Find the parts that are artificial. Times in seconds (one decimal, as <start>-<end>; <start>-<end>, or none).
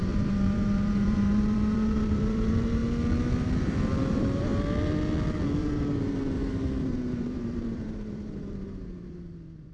0.0-2.8; 4.1-4.5; 5.6-9.7